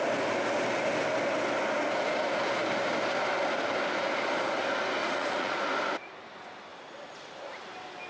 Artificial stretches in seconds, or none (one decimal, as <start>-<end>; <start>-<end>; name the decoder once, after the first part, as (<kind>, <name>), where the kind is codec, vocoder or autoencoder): 5.0-5.6 (vocoder, Vocos)